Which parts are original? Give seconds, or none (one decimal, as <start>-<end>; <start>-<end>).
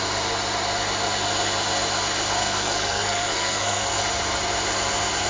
0.0-2.4; 4.0-5.3